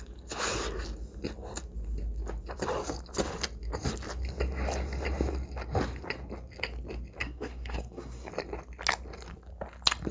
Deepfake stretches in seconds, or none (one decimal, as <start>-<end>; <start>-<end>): 7.2-8.3